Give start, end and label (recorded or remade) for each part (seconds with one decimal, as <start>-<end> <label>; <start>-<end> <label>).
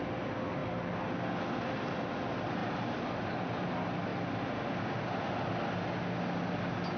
0.0-2.6 recorded; 2.6-3.3 remade; 3.3-7.0 recorded